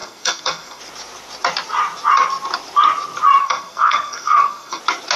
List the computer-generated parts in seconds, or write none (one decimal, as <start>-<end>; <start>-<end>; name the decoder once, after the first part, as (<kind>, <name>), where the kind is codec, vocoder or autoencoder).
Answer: 0.0-0.8 (codec, SNAC); 3.4-4.8